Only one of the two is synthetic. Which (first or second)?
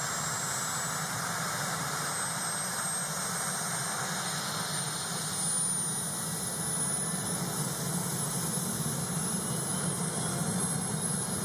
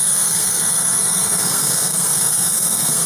second